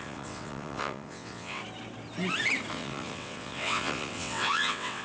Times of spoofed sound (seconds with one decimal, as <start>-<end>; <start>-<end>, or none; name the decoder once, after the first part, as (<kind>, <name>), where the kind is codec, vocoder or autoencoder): 0.0-1.6 (vocoder, WaveNeXt); 2.7-5.0